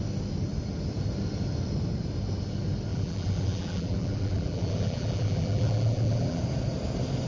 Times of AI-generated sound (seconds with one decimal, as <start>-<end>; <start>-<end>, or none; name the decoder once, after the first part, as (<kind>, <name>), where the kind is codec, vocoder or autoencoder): 2.9-6.4 (vocoder, BigVGAN v2)